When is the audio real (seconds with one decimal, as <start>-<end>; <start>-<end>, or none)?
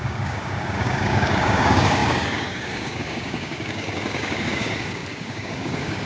none